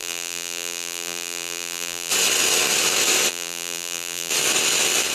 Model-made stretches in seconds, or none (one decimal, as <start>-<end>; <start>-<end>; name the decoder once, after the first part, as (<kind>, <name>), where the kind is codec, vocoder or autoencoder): 0.0-2.1 (vocoder, BigVGAN v2); 3.3-4.3